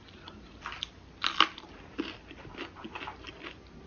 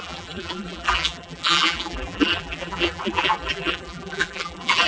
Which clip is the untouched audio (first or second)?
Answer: first